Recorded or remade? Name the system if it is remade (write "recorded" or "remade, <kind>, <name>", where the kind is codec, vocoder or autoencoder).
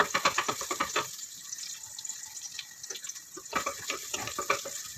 recorded